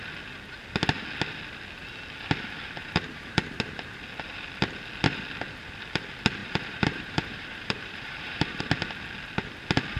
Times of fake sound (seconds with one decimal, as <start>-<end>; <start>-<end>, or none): 2.8-3.6; 6.4-8.6